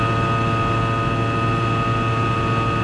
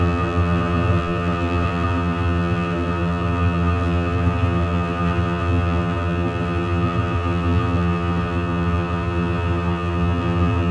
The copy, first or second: second